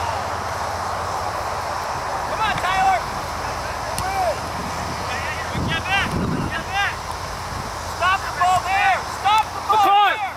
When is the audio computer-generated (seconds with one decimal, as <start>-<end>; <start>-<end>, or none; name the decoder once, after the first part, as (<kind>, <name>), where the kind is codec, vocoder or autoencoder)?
2.1-3.8 (vocoder, BigVGAN v2)